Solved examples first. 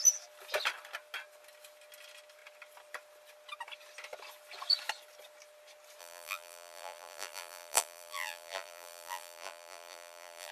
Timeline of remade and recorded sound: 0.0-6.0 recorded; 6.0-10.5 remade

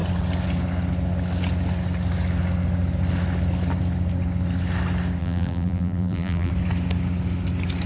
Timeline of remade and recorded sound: 0.0-5.2 recorded; 5.2-6.5 remade; 6.5-7.9 recorded

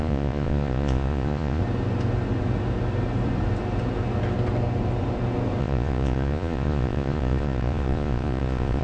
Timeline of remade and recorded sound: 0.0-1.6 remade; 1.6-5.6 recorded; 5.6-8.8 remade

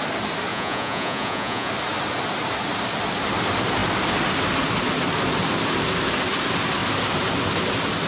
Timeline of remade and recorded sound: 0.0-0.5 recorded; 0.5-1.7 remade; 1.7-8.1 recorded

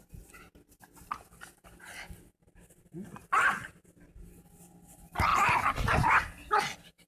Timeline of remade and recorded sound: 0.0-3.2 recorded; 3.2-3.9 remade; 3.9-5.3 recorded; 5.3-6.1 remade; 6.1-7.1 recorded

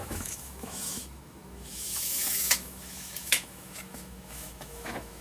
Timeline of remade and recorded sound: 0.0-5.2 remade